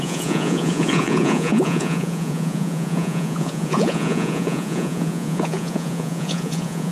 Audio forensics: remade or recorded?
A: remade